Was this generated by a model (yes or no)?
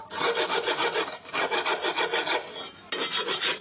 no